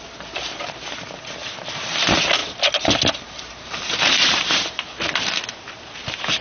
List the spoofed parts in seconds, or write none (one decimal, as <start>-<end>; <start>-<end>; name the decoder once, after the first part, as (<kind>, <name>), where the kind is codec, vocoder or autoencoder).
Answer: 2.4-6.4 (vocoder, BigVGAN v2)